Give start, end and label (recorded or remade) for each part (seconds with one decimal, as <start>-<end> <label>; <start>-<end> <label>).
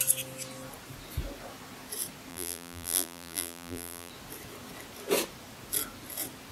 0.0-2.3 recorded; 2.3-4.1 remade; 4.1-6.5 recorded